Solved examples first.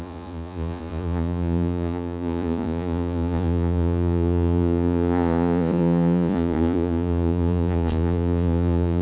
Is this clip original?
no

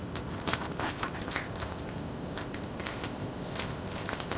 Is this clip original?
no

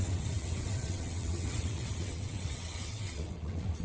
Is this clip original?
no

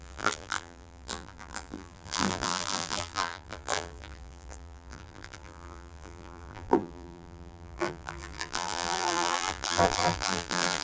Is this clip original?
no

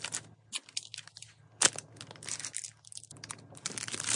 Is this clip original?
yes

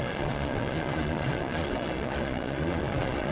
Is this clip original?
no